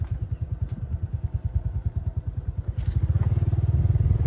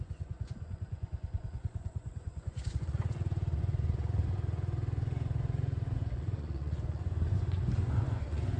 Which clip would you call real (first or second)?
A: first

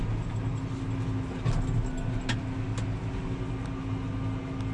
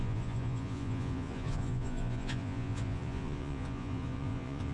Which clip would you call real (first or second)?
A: first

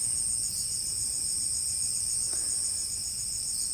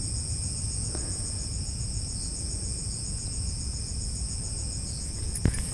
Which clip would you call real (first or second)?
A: first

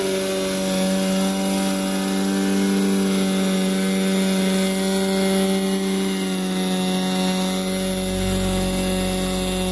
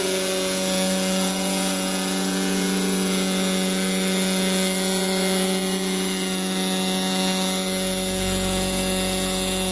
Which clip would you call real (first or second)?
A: first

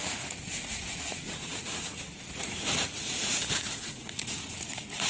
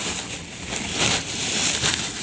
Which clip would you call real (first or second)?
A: second